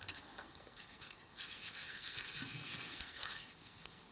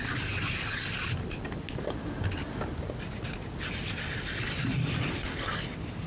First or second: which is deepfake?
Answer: first